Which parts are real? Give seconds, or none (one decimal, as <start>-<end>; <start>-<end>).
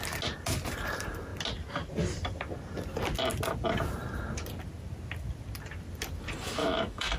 0.0-6.6